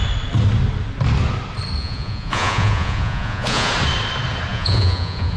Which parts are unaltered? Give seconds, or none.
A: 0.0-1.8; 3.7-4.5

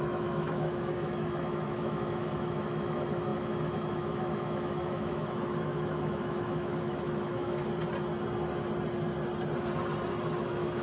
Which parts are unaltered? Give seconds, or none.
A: 7.6-10.4